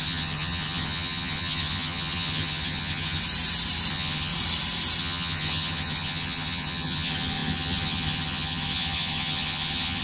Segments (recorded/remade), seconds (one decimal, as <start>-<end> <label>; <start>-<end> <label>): 0.0-3.2 remade; 3.2-3.9 recorded; 3.9-4.3 remade; 4.3-5.0 recorded; 5.0-10.0 remade